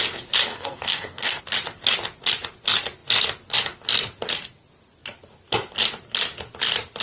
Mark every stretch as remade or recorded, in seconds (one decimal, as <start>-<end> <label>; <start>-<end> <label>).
0.0-0.5 recorded; 0.5-1.4 remade; 1.4-7.0 recorded